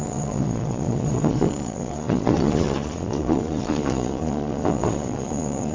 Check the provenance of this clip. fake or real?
fake